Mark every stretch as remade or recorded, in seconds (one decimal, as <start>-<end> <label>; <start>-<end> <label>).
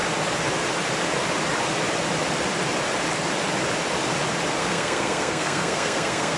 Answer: 0.0-4.6 recorded; 4.6-6.4 remade